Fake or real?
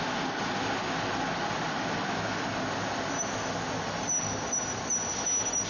real